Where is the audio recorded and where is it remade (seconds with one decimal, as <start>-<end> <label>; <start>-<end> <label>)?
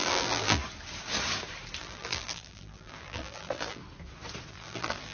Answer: 0.0-0.6 remade; 0.6-1.8 recorded; 1.8-3.8 remade; 3.8-4.5 recorded; 4.5-5.1 remade